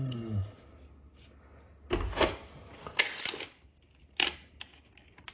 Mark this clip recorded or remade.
recorded